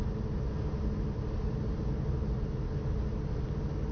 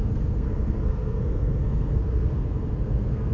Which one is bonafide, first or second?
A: first